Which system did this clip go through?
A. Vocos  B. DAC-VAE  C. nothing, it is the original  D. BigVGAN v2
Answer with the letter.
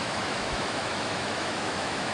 B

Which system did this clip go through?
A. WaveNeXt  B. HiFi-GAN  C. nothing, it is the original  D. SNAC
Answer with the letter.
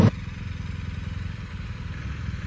C